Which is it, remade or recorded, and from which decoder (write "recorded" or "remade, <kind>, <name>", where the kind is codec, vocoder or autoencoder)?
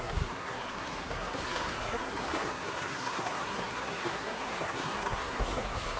remade, codec, SNAC